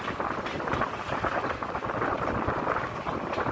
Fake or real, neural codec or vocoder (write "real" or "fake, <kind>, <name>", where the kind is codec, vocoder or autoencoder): real